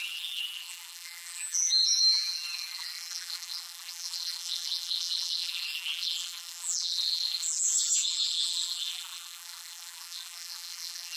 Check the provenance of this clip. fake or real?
fake